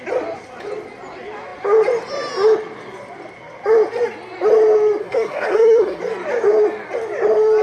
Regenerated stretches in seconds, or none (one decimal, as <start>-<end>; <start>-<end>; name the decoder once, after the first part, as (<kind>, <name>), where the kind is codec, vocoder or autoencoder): 5.0-6.0 (codec, SNAC)

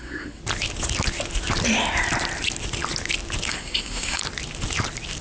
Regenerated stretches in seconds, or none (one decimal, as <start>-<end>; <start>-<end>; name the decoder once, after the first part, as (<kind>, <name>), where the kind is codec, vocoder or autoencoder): 0.0-0.4 (codec, SNAC); 3.5-4.2

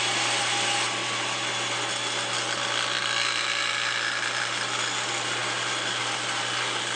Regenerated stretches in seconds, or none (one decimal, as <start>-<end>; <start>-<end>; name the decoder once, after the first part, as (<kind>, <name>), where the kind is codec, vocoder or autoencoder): none

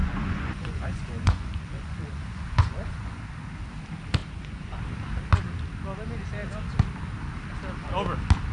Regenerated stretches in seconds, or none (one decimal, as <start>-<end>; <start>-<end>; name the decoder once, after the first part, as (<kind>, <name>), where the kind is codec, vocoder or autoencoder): 0.0-3.2 (vocoder, Vocos); 4.2-4.8

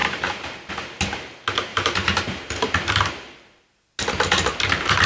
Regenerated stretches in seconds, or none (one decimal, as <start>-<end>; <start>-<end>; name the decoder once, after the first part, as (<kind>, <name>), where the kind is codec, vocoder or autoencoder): 0.0-0.7 (vocoder, BigVGAN v2); 1.7-3.6

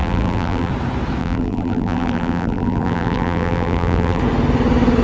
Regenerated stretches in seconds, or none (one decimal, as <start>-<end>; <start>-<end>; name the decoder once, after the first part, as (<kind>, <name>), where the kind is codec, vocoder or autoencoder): 0.0-0.7 (vocoder, BigVGAN v2); 1.2-4.2

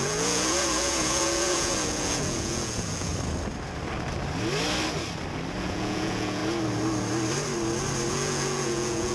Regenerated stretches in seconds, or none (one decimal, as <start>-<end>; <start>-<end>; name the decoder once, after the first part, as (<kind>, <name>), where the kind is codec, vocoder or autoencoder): 0.0-3.1 (vocoder, Vocos); 5.6-6.4; 8.1-9.1